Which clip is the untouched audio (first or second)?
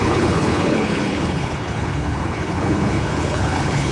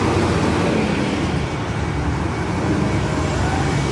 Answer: second